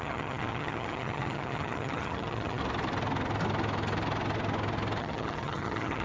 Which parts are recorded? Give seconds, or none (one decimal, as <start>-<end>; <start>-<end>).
2.6-5.0